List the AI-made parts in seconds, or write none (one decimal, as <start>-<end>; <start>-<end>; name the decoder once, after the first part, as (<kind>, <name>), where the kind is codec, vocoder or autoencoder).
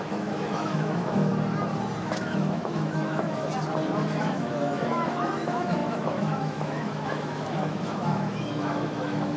0.0-1.3 (autoencoder, DAC-VAE); 2.0-3.5; 4.2-9.4